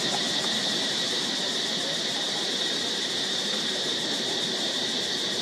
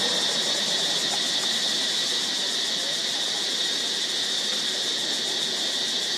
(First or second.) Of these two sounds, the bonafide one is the second